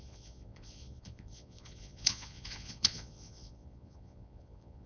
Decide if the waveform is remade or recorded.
remade